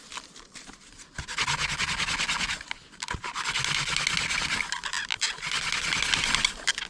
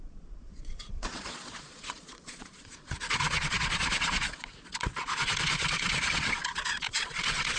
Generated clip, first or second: second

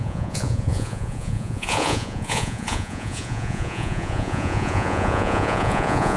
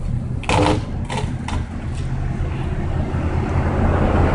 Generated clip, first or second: first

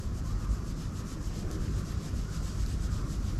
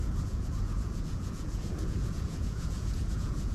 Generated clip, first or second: second